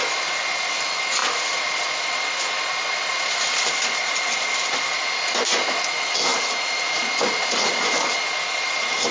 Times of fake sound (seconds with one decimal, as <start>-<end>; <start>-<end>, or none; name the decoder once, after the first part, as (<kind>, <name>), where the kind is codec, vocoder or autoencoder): 6.3-7.1 (vocoder, BigVGAN v2)